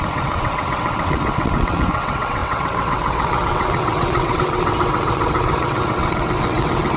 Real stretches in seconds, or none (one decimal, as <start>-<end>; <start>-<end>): none